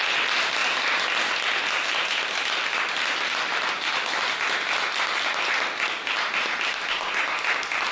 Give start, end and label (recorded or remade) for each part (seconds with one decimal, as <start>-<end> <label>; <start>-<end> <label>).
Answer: 0.0-7.9 recorded